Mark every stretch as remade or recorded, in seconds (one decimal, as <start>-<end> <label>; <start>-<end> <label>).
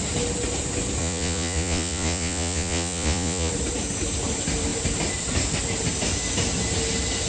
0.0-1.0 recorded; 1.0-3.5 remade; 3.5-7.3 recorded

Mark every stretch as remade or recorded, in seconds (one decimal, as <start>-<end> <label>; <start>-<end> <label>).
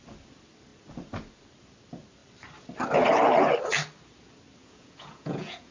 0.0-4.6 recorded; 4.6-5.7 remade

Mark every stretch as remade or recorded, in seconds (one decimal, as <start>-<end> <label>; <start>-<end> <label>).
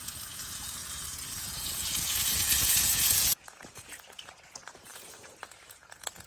0.0-6.3 remade